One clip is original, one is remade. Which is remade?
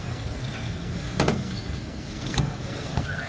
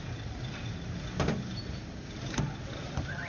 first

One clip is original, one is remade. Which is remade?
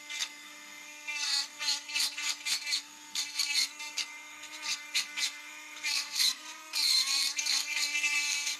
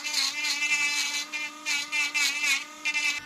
first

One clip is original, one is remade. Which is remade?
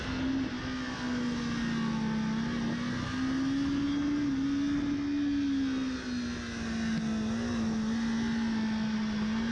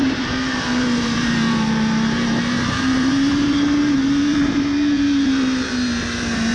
second